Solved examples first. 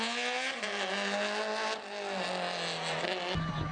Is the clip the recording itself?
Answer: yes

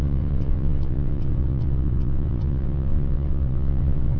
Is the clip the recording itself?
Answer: no